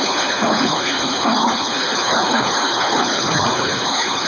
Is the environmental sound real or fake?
fake